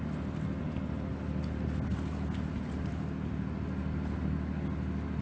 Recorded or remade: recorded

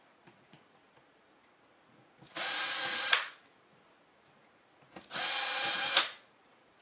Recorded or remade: remade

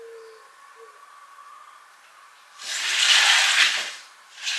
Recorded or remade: recorded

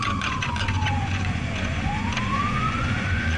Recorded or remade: remade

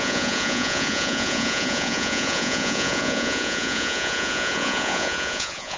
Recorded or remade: remade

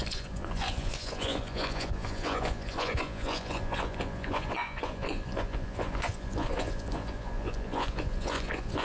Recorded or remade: remade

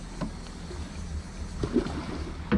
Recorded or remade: recorded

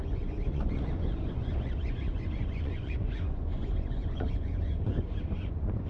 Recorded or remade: remade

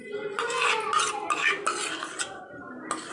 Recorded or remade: recorded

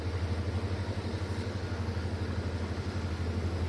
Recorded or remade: recorded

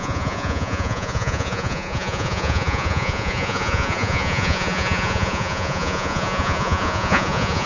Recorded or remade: remade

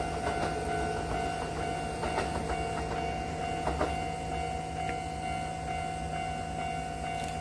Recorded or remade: recorded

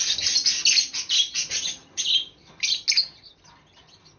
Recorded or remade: recorded